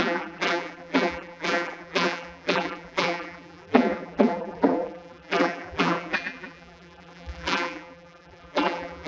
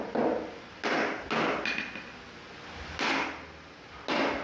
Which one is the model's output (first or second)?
first